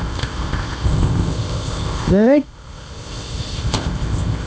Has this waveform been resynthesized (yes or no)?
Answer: yes